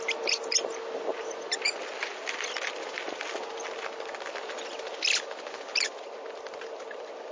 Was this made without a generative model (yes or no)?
yes